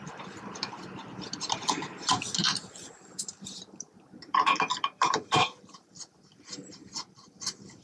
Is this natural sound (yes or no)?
no